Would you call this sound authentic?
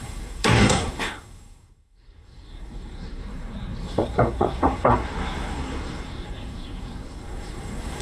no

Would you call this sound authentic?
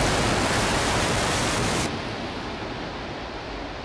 yes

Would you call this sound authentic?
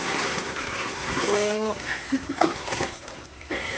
no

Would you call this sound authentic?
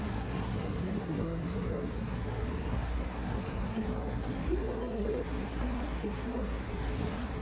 no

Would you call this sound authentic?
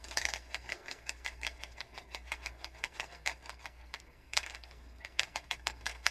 no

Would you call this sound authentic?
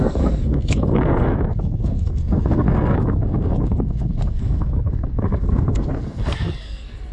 no